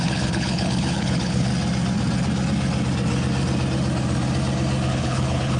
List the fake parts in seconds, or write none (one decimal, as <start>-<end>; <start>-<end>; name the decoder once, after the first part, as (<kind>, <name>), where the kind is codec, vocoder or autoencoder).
0.0-1.5 (codec, HILCodec); 4.9-5.6